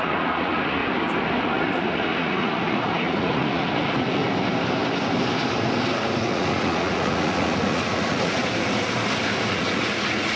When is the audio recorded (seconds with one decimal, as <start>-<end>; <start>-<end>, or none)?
0.8-1.4; 4.2-6.2; 8.4-9.5